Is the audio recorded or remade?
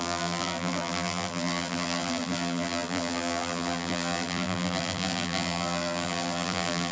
remade